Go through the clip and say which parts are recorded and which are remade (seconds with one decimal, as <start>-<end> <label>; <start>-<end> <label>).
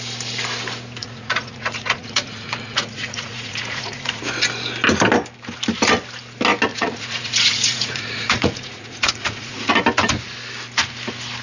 0.0-1.0 recorded; 1.0-4.2 remade; 4.2-6.7 recorded; 6.7-9.7 remade; 9.7-11.4 recorded